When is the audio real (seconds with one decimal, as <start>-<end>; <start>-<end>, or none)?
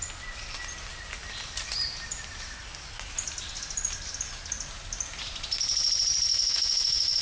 0.0-6.3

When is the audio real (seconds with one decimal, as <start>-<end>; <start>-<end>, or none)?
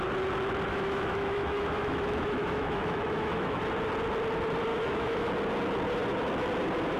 0.0-0.7; 3.6-4.7; 5.3-7.0